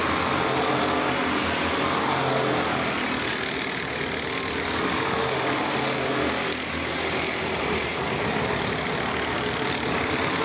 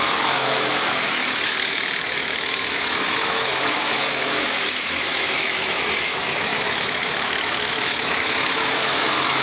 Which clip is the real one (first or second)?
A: first